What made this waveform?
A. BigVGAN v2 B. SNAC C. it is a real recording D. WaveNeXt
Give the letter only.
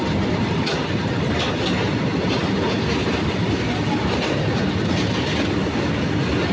C